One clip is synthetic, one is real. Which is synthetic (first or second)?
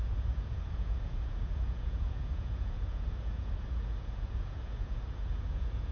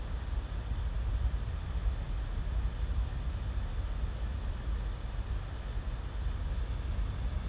first